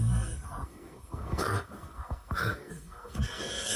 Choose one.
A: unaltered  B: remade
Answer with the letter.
B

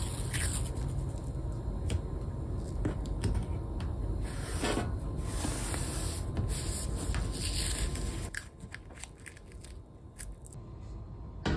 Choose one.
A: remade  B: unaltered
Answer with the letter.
B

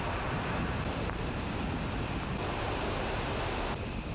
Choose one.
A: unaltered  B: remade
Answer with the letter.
A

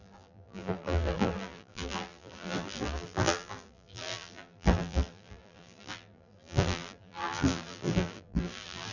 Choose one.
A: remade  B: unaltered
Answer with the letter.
A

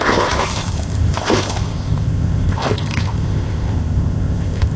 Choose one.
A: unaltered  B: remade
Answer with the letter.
B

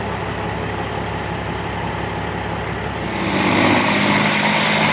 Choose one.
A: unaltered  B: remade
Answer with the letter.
A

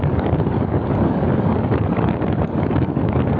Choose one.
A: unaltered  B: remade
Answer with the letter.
B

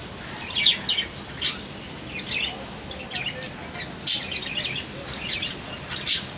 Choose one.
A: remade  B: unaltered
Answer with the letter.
B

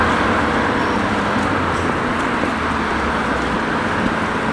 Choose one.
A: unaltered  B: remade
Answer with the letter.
A